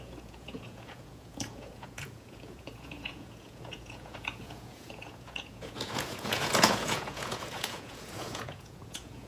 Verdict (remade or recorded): remade